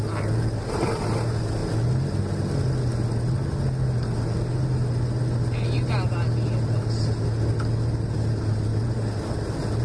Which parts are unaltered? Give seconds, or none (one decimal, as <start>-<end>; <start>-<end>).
0.0-9.8